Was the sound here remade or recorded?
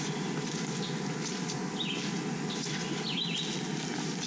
recorded